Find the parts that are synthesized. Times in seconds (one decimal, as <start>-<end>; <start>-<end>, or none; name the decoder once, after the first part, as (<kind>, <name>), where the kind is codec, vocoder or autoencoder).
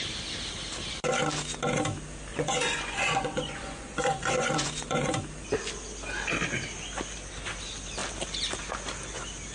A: 2.3-5.2 (vocoder, Vocos)